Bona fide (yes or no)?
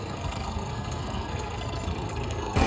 no